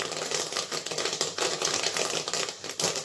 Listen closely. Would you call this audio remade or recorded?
recorded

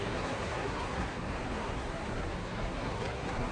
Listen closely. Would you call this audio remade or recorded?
remade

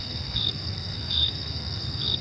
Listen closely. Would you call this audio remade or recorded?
remade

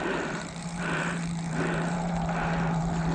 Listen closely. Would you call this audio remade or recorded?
remade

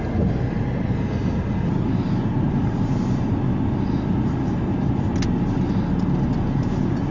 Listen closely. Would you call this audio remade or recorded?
recorded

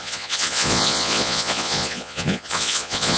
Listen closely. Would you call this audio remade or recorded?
remade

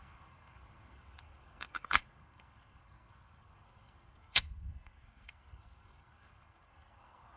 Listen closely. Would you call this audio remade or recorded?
remade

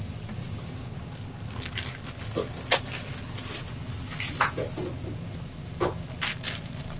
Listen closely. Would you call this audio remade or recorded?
recorded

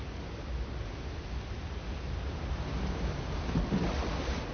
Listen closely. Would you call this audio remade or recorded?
recorded